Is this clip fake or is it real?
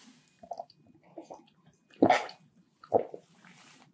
real